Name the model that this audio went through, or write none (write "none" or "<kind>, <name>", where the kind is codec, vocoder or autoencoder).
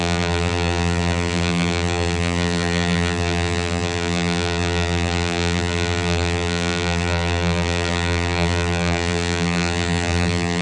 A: vocoder, BigVGAN v2